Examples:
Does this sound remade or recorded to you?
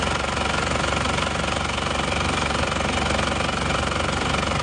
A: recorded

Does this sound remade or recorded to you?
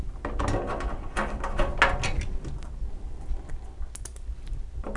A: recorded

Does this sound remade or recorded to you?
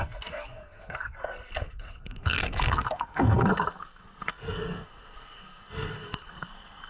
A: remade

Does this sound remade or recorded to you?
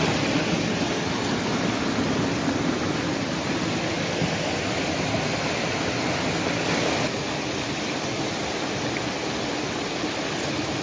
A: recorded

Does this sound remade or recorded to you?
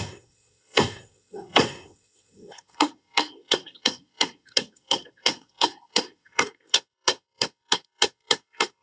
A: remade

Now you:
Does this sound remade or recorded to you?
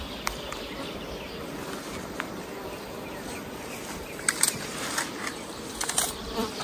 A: recorded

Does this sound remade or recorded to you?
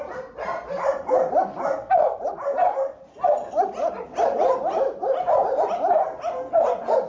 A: recorded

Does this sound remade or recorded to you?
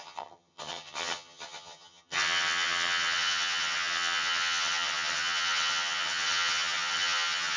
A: remade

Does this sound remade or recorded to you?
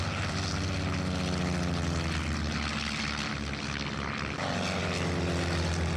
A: recorded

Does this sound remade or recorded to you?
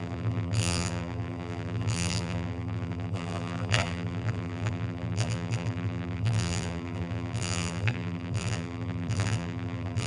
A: remade